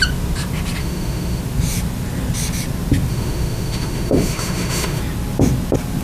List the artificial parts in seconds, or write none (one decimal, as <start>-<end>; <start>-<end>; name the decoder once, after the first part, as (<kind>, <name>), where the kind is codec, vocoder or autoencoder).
0.8-1.4 (autoencoder, DAC-VAE); 3.1-5.0